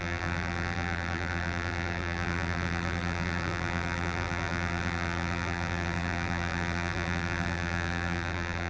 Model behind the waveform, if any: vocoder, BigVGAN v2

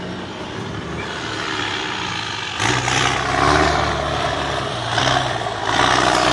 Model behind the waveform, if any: vocoder, BigVGAN v2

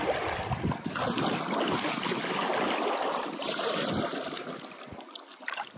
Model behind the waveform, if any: none